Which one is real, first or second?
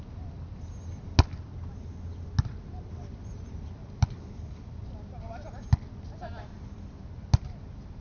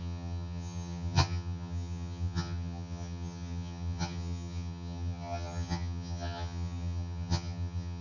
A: first